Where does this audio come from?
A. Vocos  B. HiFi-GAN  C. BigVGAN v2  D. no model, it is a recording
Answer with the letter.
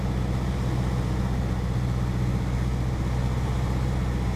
D